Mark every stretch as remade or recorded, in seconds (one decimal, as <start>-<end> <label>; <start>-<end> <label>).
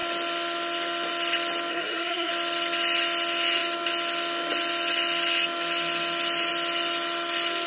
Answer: 0.0-1.7 recorded; 1.7-2.3 remade; 2.3-7.7 recorded